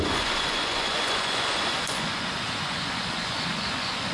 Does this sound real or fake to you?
fake